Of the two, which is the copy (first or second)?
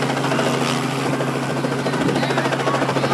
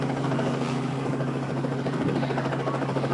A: second